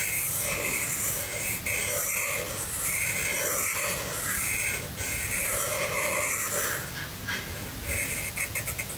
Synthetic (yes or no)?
no